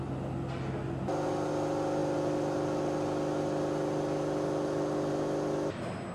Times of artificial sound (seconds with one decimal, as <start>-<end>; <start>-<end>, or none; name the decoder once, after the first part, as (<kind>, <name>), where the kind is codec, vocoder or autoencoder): none